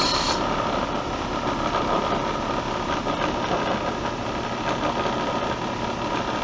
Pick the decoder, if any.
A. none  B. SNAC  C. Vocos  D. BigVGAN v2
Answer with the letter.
A